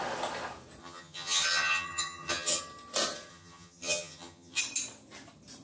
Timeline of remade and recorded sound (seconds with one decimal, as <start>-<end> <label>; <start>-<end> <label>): 0.0-0.8 recorded; 0.8-2.6 remade; 2.6-3.3 recorded; 3.3-4.6 remade; 4.6-5.6 recorded